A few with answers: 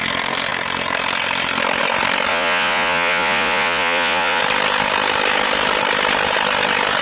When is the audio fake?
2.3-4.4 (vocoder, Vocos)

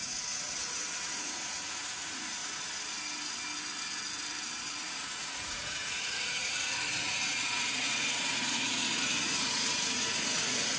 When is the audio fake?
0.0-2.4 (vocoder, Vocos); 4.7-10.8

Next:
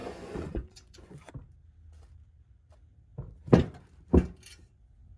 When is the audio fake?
0.0-1.3 (vocoder, Vocos)